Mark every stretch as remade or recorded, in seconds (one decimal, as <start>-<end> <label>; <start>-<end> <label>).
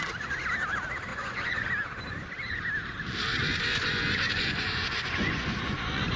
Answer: 0.0-1.1 recorded; 1.1-1.7 remade; 1.7-3.7 recorded; 3.7-6.2 remade